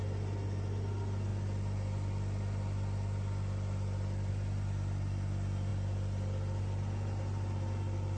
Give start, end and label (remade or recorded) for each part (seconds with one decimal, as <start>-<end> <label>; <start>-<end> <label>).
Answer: 0.0-8.2 recorded